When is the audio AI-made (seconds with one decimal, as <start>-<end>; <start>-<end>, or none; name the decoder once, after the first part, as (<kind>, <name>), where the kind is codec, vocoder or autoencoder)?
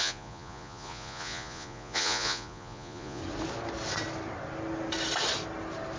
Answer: 0.0-3.2 (vocoder, Vocos)